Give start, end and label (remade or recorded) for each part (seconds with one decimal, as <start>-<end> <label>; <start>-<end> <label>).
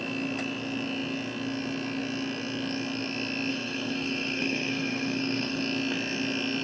0.0-3.5 recorded; 3.5-5.6 remade; 5.6-6.6 recorded